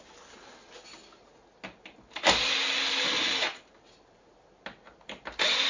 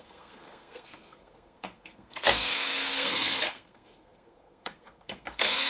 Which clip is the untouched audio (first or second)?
first